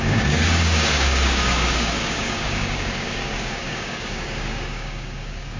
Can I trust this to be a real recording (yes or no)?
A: no